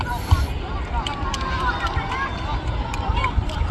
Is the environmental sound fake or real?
real